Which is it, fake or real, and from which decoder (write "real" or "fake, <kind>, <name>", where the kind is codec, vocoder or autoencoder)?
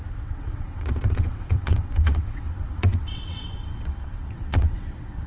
fake, vocoder, WaveNeXt